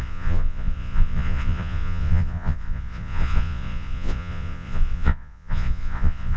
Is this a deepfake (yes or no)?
yes